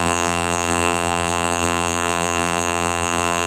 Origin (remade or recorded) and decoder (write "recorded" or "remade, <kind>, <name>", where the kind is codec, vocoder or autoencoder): remade, vocoder, BigVGAN v2